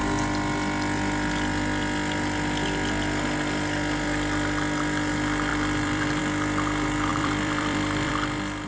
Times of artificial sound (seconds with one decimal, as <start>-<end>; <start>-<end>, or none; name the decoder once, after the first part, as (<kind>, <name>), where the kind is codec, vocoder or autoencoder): 5.5-6.2 (vocoder, BigVGAN v2); 7.1-8.1